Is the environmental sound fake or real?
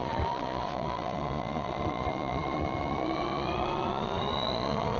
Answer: fake